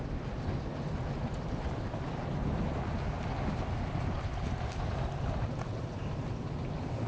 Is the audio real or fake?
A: real